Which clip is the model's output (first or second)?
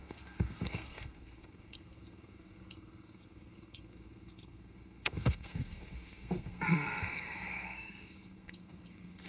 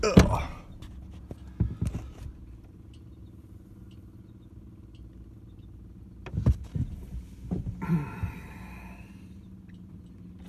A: first